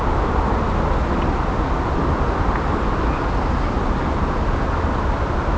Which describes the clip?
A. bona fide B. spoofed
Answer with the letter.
A